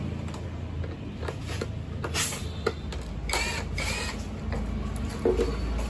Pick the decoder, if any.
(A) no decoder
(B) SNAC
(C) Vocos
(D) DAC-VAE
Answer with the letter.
A